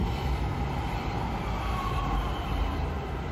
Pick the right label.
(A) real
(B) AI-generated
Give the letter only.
A